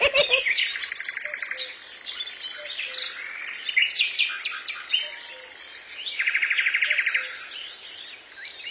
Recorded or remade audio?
recorded